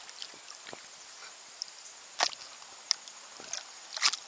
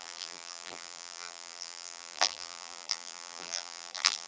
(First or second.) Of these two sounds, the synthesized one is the second